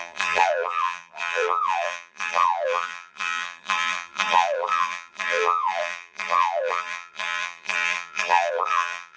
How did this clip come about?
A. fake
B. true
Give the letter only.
A